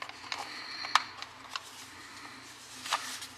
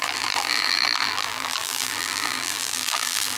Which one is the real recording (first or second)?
first